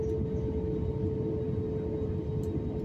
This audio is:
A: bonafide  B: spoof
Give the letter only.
A